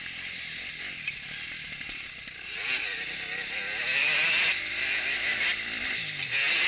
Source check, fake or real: fake